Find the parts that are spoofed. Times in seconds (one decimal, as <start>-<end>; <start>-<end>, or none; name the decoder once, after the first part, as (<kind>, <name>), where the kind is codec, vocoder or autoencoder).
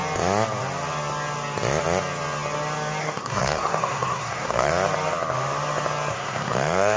3.0-4.7 (codec, SNAC); 6.1-7.0